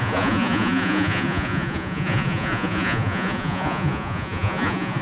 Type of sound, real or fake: fake